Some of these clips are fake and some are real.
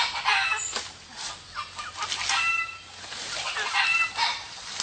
real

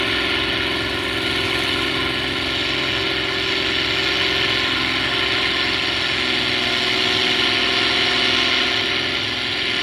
real